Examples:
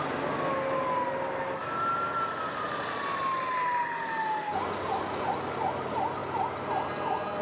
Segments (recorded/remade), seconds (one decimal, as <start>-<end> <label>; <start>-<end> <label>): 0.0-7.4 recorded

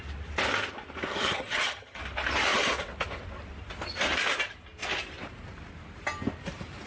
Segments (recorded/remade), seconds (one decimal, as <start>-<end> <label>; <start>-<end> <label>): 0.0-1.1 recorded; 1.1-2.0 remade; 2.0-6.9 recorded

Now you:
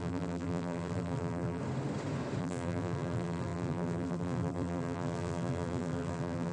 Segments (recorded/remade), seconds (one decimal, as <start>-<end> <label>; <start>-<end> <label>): 0.0-1.6 remade; 1.6-2.4 recorded; 2.4-6.5 remade

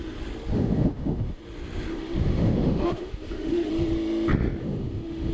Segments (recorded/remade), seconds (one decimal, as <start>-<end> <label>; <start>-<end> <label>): 0.0-0.5 recorded; 0.5-1.4 remade; 1.4-1.9 recorded; 1.9-3.7 remade; 3.7-4.6 recorded; 4.6-5.3 remade

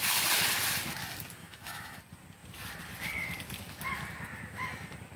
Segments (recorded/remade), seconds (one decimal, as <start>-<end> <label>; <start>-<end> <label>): 0.0-1.4 recorded; 1.4-2.0 remade; 2.0-5.2 recorded

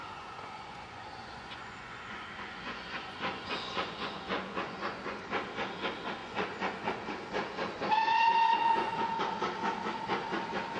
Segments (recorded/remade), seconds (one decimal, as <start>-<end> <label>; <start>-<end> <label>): 0.0-5.2 remade; 5.2-6.2 recorded; 6.2-9.2 remade; 9.2-10.8 recorded

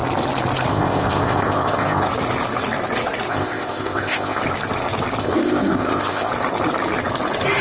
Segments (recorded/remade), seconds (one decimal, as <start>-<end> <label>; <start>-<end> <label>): 0.0-0.7 recorded; 0.7-2.1 remade; 2.1-3.3 recorded; 3.3-4.4 remade; 4.4-5.2 recorded; 5.2-6.3 remade; 6.3-7.6 recorded

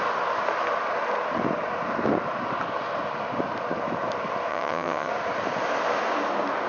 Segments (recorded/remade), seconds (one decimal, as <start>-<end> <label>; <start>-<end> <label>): 0.0-4.5 recorded; 4.5-5.1 remade; 5.1-6.7 recorded